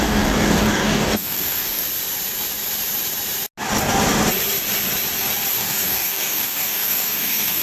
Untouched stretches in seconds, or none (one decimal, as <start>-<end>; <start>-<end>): 1.8-5.5